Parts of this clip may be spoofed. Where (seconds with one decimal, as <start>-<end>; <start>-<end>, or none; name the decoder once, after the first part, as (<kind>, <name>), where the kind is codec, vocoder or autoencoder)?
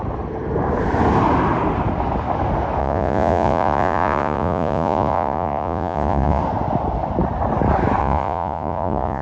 2.8-6.4 (vocoder, Vocos); 8.0-9.2